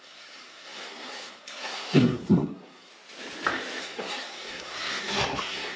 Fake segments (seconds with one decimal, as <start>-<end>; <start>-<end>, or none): 0.0-2.9; 3.8-5.8